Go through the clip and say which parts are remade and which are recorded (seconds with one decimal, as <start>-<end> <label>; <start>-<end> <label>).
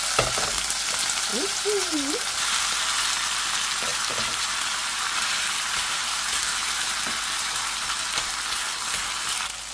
0.0-1.3 recorded; 1.3-2.6 remade; 2.6-3.9 recorded; 3.9-8.3 remade; 8.3-9.7 recorded